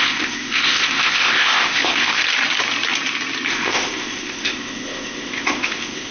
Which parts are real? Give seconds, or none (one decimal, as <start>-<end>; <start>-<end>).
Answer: 2.2-3.5